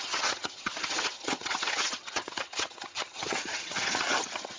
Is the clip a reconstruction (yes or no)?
yes